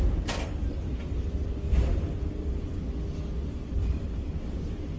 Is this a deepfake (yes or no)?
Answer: no